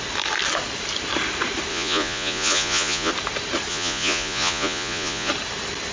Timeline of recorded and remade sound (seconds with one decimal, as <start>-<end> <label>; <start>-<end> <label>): 0.0-1.7 recorded; 1.7-3.1 remade; 3.1-3.7 recorded; 3.7-5.3 remade; 5.3-5.9 recorded